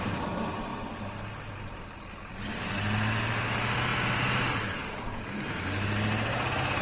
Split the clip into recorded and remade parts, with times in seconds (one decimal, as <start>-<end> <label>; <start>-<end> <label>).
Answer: 0.0-3.9 recorded; 3.9-5.2 remade; 5.2-6.8 recorded